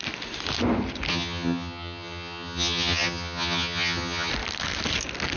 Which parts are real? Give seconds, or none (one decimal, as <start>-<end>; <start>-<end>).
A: 0.0-1.1; 4.3-5.4